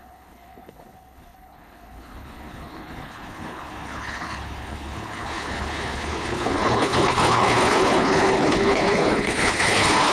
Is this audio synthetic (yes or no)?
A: yes